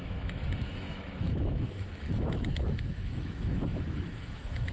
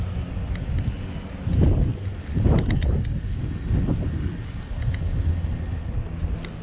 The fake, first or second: first